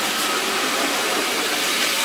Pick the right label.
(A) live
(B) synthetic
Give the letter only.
A